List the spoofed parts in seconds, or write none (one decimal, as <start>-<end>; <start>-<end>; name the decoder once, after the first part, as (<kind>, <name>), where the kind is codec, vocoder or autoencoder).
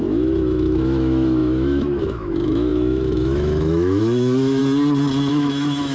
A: 0.0-4.6 (autoencoder, DAC-VAE); 5.3-5.9